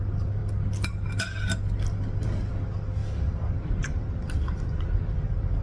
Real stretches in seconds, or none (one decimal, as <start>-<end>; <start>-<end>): 0.0-5.6